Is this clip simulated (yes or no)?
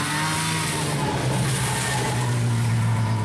no